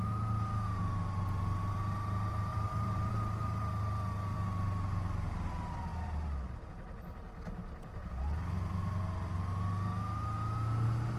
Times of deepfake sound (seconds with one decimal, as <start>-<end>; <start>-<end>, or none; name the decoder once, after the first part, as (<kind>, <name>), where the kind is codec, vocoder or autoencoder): 2.5-3.1 (vocoder, BigVGAN v2)